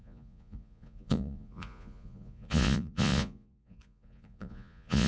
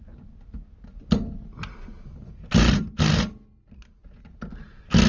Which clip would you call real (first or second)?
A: second